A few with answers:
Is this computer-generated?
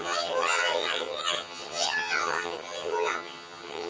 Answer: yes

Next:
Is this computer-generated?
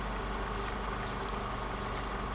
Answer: no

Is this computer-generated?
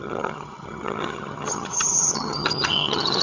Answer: yes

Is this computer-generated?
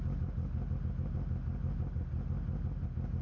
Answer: no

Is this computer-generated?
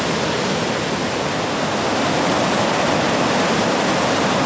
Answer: no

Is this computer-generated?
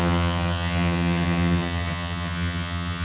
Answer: yes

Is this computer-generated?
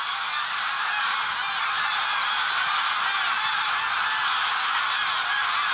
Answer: no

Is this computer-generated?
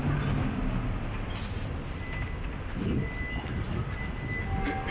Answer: no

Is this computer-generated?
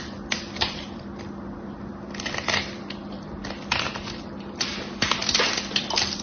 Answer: no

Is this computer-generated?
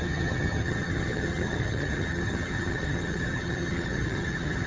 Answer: yes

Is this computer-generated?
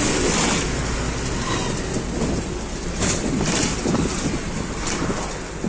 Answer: no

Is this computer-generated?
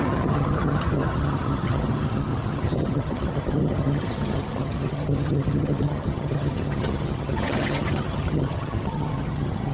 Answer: yes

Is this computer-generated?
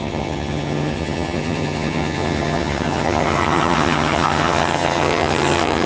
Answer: yes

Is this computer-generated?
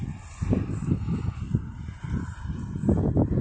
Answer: no